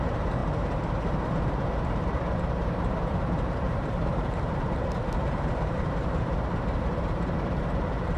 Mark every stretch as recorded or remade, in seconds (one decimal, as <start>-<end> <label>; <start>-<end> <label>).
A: 0.0-8.2 remade